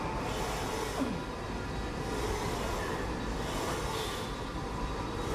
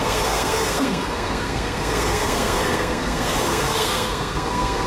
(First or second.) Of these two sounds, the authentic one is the first